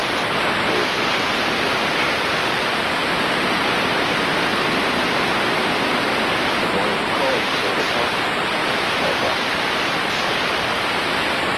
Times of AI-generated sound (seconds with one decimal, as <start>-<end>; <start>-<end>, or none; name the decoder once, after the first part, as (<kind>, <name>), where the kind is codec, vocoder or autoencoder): 8.6-9.2 (vocoder, BigVGAN v2)